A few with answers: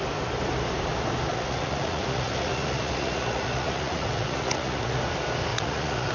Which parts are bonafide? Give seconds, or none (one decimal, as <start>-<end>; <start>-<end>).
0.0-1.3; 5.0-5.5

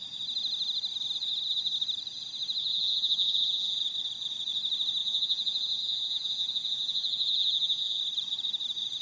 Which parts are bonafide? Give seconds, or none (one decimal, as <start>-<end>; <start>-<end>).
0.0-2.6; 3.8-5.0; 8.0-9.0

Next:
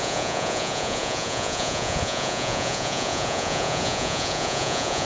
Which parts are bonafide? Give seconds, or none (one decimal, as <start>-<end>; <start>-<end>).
none

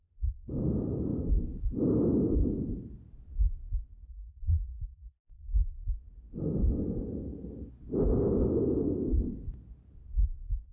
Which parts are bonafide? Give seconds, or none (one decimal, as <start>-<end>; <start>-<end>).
0.0-4.1; 4.8-10.7

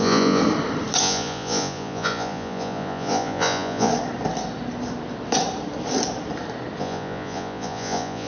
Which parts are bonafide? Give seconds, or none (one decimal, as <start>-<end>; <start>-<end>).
0.4-1.0; 3.9-6.8

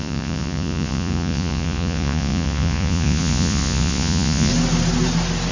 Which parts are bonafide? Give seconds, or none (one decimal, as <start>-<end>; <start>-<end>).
4.5-5.5

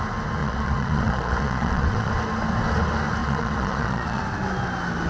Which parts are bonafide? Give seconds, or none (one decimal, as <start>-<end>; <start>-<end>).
0.0-0.4; 2.1-3.2; 4.2-5.1